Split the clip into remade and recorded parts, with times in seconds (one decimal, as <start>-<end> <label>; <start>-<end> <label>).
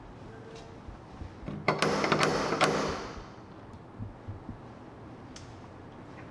0.0-6.3 recorded